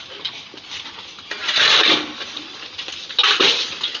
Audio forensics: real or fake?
real